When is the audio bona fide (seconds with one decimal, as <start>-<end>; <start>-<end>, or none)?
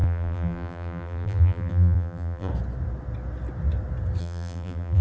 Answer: 2.5-4.2